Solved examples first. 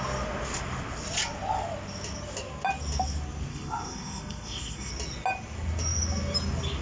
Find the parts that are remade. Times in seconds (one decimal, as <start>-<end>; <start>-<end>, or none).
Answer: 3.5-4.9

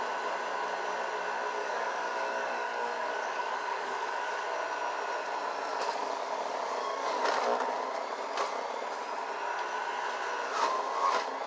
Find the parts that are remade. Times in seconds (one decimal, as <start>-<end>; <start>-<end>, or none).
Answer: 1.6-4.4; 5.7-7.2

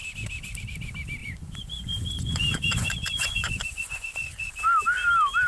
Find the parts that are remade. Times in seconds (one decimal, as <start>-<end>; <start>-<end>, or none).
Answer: 1.2-4.5

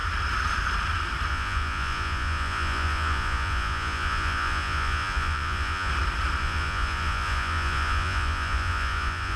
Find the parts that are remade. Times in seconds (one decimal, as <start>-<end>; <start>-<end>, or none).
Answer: 1.3-5.9; 6.4-9.4

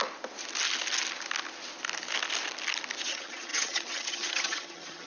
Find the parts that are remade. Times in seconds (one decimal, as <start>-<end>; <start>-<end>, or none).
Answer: 3.1-5.1

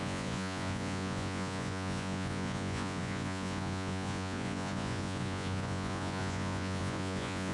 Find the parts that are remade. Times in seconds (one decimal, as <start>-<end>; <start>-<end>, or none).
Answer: 0.0-7.5

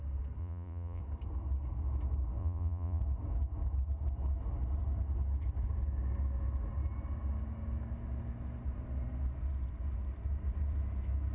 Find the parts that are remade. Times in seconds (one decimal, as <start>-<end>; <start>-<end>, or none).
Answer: 0.4-1.0; 2.4-3.0